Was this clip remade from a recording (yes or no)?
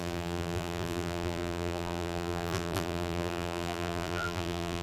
yes